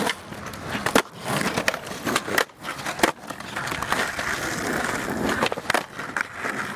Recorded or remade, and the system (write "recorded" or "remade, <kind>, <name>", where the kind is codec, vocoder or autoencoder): recorded